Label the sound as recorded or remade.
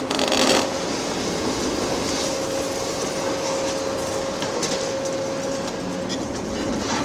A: recorded